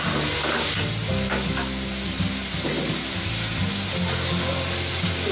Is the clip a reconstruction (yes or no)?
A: no